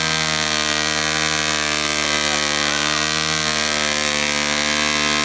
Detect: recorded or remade recorded